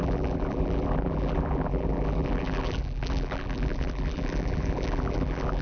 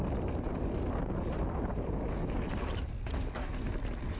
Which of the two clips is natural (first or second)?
second